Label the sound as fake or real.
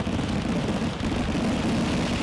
fake